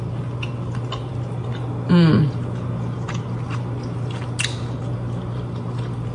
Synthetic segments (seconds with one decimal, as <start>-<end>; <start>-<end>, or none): none